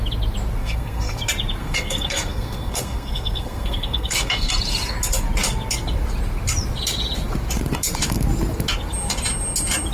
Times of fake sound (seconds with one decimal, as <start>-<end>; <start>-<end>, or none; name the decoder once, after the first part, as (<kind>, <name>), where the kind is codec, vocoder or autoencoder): 0.6-1.2 (codec, SNAC); 1.6-4.5